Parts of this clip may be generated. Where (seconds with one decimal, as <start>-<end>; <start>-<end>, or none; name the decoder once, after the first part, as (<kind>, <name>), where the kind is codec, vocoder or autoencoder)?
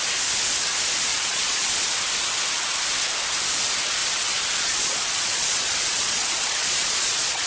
1.1-1.7 (vocoder, Vocos); 4.0-7.5